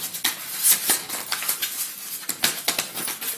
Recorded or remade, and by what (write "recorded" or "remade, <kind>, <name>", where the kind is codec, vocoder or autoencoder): recorded